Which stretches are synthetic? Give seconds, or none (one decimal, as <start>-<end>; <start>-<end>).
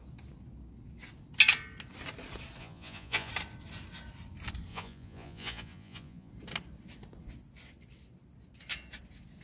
2.6-3.3; 4.7-6.3